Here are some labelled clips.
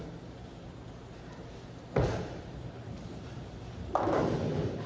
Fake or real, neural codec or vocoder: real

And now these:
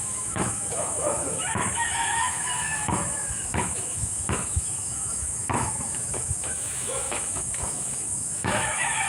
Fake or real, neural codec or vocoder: fake, autoencoder, DAC-VAE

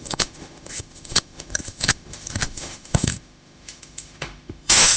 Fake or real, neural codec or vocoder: fake, autoencoder, DAC-VAE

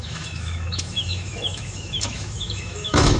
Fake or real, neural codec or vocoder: fake, autoencoder, DAC-VAE